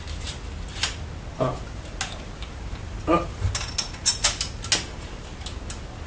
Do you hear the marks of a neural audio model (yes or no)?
no